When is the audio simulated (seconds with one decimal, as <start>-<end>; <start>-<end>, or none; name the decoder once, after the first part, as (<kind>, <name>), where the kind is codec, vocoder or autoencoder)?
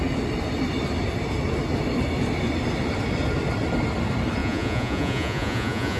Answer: 4.4-6.0 (vocoder, Vocos)